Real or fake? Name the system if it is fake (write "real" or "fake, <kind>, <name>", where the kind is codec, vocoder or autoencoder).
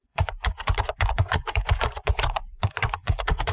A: fake, vocoder, Vocos